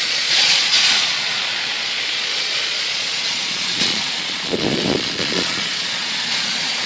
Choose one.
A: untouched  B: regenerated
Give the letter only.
B